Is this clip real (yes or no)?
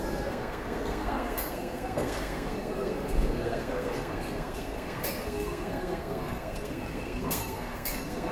no